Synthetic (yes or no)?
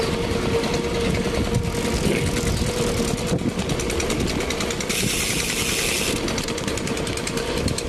no